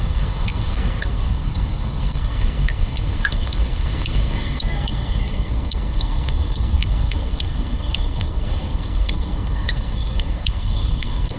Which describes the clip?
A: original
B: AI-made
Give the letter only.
B